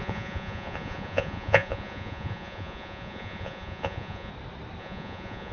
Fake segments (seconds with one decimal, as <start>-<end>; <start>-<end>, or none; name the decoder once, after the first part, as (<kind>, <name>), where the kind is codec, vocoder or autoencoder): 0.0-4.3 (vocoder, Vocos); 4.8-5.5